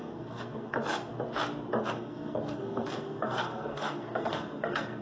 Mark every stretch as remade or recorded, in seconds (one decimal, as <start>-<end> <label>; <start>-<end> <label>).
0.0-1.1 remade; 1.1-1.8 recorded; 1.8-5.0 remade